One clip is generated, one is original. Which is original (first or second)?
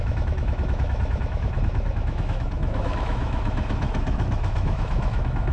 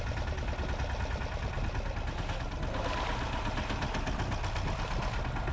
second